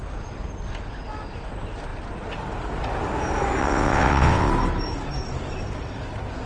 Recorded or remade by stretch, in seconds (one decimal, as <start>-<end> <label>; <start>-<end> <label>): 0.0-3.6 recorded; 3.6-4.5 remade; 4.5-6.5 recorded

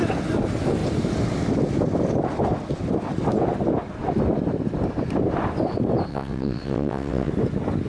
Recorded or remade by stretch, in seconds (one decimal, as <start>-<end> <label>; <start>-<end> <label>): 0.0-6.1 recorded; 6.1-7.3 remade; 7.3-7.9 recorded

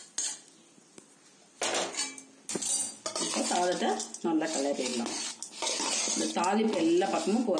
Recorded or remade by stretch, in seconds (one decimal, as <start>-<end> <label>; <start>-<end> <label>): 0.0-7.6 recorded

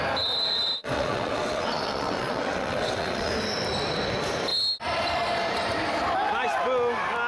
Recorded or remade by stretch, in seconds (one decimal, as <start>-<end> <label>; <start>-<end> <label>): 0.0-0.8 recorded; 0.8-3.3 remade; 3.3-7.3 recorded